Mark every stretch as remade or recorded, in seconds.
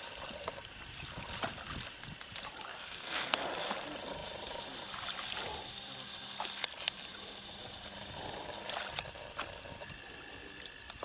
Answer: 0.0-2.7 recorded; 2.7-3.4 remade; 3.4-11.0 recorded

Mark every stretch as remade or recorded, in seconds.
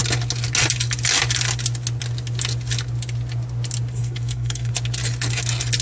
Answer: 0.0-4.0 recorded; 4.0-4.7 remade; 4.7-5.8 recorded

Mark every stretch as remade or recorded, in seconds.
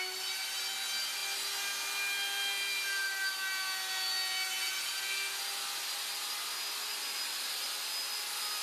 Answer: 0.0-8.6 recorded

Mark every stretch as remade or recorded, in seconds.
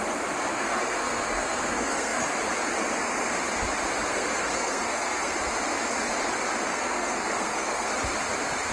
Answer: 0.0-0.5 recorded; 0.5-2.2 remade; 2.2-4.1 recorded; 4.1-5.3 remade; 5.3-6.7 recorded; 6.7-7.9 remade; 7.9-8.7 recorded